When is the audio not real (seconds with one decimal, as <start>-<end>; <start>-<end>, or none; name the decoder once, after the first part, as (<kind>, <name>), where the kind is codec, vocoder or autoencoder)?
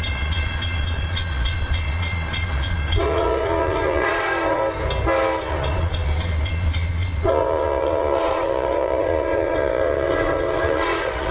0.0-4.6 (vocoder, Vocos); 5.5-11.3